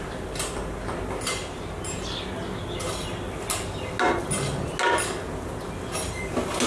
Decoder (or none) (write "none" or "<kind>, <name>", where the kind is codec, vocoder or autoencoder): none